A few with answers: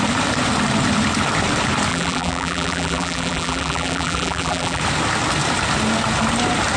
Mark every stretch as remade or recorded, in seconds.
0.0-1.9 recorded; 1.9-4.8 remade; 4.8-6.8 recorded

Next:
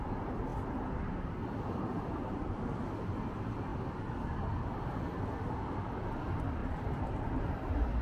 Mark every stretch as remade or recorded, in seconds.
0.0-1.9 recorded; 1.9-2.4 remade; 2.4-6.6 recorded; 6.6-7.2 remade; 7.2-8.0 recorded

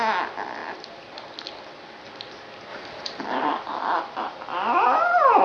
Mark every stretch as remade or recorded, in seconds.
0.0-2.7 recorded; 2.7-3.2 remade; 3.2-3.7 recorded; 3.7-4.4 remade; 4.4-5.4 recorded